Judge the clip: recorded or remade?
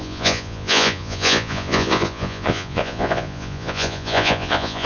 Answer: remade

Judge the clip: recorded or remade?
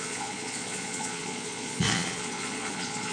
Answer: remade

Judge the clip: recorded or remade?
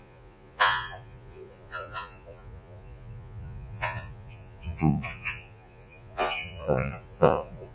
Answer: remade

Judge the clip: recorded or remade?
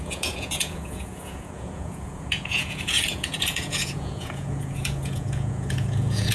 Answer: remade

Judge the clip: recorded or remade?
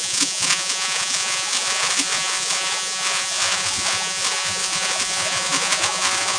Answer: remade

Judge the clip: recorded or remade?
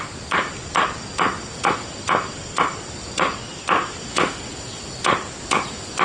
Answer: recorded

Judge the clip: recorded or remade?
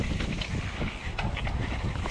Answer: recorded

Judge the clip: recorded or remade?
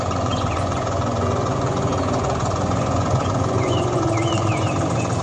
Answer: remade